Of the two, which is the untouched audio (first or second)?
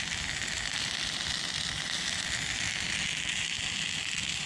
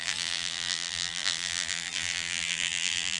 first